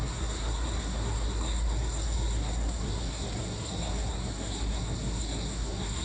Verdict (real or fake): fake